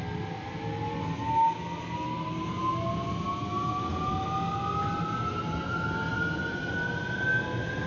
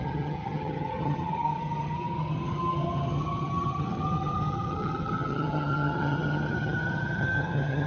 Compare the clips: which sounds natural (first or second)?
first